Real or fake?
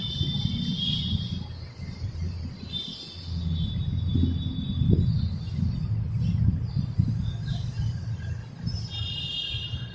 real